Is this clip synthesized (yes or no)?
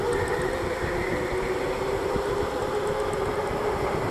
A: no